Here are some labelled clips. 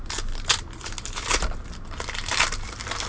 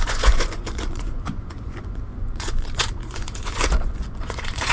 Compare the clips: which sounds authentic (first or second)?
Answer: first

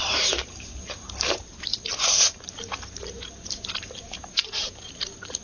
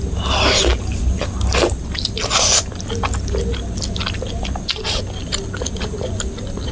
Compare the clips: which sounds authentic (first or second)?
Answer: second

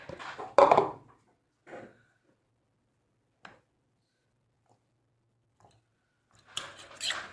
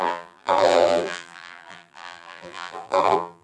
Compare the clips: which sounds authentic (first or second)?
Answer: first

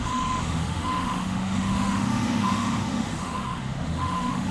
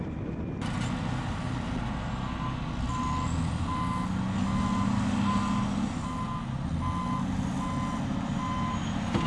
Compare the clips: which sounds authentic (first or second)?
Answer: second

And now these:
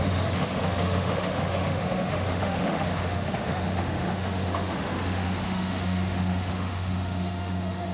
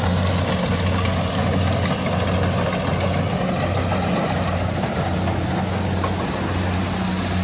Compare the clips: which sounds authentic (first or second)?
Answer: second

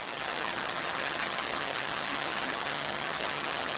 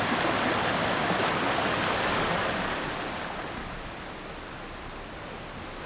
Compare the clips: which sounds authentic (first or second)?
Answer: second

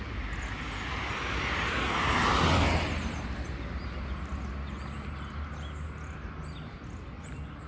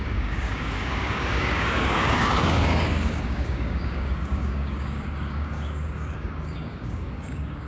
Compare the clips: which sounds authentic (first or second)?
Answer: first